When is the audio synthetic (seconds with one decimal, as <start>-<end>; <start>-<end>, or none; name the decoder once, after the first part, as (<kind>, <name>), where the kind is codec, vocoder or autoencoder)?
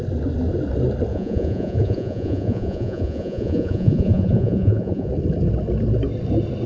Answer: 1.1-5.1 (vocoder, Vocos)